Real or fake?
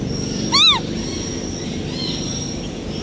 real